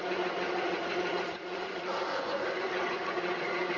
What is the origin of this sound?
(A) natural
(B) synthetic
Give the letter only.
B